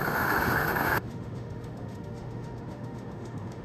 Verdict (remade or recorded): remade